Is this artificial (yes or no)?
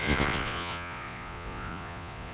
yes